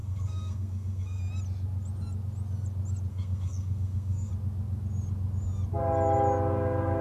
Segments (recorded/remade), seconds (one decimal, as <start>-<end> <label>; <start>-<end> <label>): 0.0-1.2 remade; 1.2-3.1 recorded; 3.1-4.3 remade; 4.3-7.0 recorded